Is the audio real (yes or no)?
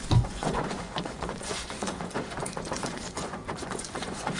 no